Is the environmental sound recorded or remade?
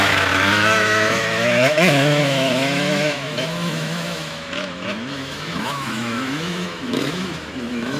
remade